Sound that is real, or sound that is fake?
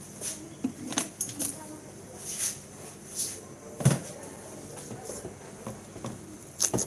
real